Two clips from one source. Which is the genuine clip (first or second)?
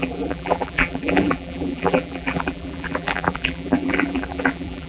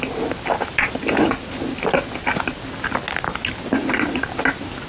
second